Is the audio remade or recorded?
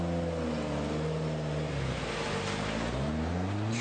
recorded